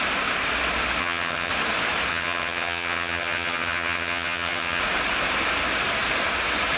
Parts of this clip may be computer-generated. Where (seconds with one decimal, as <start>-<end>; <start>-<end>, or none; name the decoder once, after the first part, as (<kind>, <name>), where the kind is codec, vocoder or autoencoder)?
1.0-1.5 (vocoder, HiFi-GAN); 2.1-4.8